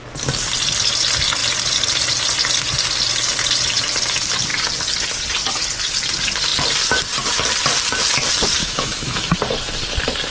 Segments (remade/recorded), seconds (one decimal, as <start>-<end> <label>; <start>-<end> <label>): 0.0-8.6 recorded; 8.6-9.3 remade; 9.3-10.3 recorded